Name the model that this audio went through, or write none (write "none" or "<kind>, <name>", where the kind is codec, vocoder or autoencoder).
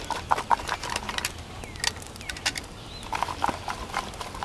none